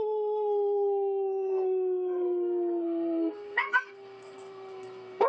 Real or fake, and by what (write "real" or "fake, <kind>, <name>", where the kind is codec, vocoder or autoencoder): fake, codec, SNAC